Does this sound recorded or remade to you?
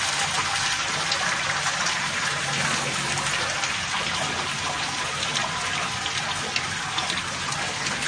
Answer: recorded